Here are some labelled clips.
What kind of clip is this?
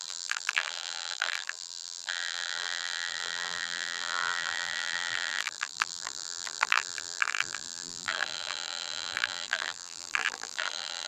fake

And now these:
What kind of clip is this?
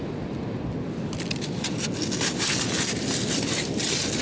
real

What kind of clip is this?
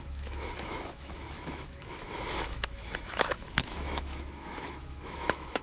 fake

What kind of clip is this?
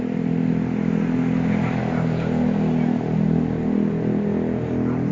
real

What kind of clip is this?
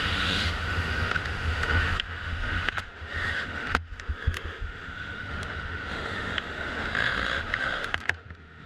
fake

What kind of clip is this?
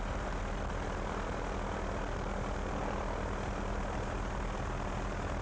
real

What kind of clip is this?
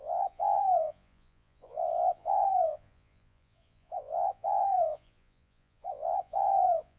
fake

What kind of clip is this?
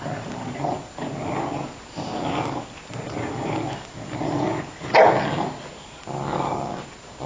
real